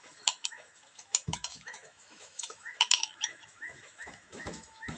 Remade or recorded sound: remade